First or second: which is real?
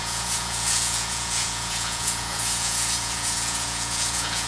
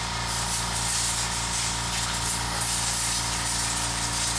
second